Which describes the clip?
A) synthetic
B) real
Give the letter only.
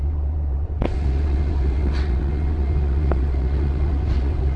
A